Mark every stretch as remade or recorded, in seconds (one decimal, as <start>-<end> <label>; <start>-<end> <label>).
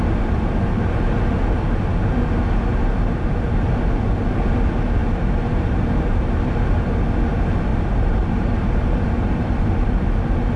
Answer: 0.0-5.0 recorded; 5.0-6.5 remade; 6.5-7.7 recorded; 7.7-9.5 remade; 9.5-10.6 recorded